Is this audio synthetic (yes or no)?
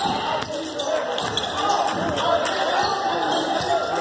no